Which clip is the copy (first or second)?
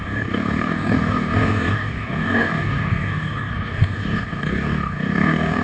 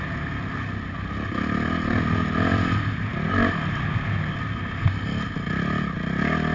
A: first